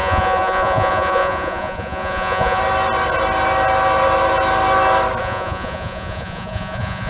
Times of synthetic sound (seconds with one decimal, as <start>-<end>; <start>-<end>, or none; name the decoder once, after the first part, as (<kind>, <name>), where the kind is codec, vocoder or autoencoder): 0.0-2.6 (vocoder, Vocos); 5.2-7.1